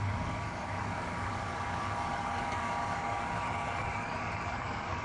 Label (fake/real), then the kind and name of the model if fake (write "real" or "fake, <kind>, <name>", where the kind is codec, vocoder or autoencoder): fake, codec, DAC